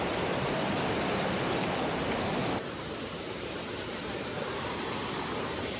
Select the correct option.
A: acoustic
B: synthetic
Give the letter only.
B